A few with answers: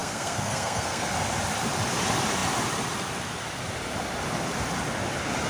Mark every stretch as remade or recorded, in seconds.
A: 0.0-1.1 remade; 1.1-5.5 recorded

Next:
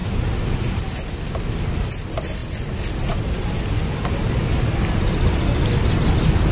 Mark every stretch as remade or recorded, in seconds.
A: 0.0-6.5 recorded

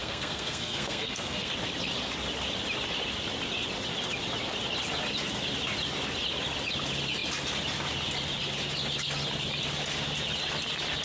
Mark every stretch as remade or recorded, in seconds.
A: 0.0-1.5 remade; 1.5-11.0 recorded